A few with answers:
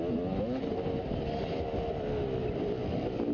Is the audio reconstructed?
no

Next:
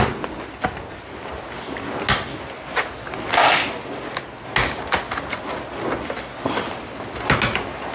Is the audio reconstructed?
no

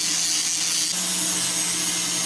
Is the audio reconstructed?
no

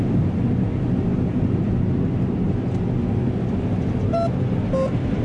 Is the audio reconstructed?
no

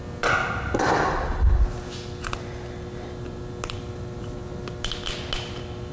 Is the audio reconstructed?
no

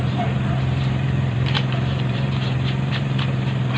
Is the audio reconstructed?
yes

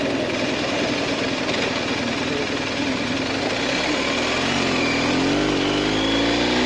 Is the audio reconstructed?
no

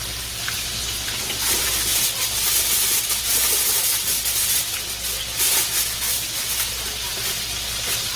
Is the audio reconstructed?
no